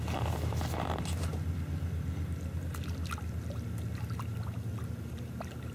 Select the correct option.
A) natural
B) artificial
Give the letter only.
A